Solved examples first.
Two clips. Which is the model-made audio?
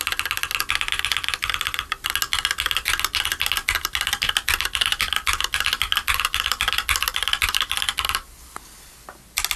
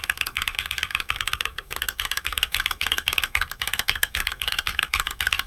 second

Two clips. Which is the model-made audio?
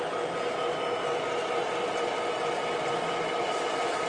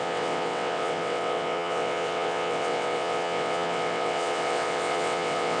second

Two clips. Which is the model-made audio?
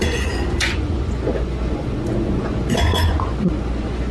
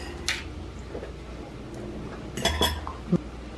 first